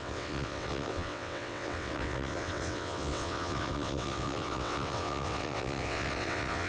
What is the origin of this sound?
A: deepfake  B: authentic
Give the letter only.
A